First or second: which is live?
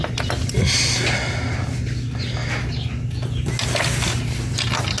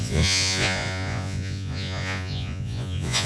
first